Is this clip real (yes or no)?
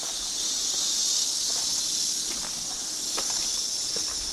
yes